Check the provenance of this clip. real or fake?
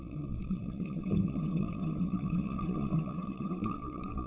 fake